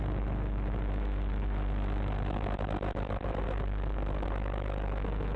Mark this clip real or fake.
fake